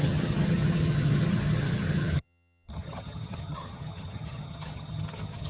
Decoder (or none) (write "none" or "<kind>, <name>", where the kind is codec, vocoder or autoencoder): vocoder, HiFi-GAN